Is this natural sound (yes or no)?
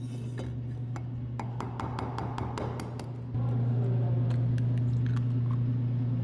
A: yes